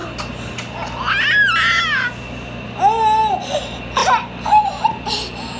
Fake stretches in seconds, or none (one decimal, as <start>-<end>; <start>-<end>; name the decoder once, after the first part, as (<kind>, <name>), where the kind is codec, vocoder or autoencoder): none